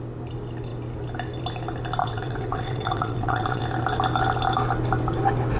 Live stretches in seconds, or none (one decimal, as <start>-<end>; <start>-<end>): 0.0-2.0; 3.6-5.6

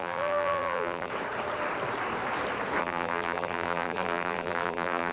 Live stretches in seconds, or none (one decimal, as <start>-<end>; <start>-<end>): 1.1-2.8